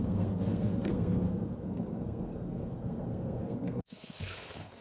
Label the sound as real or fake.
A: fake